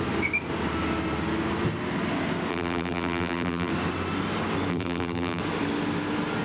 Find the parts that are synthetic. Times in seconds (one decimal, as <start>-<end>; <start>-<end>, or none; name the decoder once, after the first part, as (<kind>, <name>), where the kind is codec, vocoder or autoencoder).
2.5-3.7 (vocoder, BigVGAN v2); 4.7-5.4